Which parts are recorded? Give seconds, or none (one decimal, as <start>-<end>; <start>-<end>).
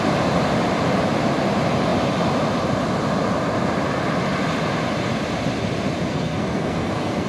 0.0-6.1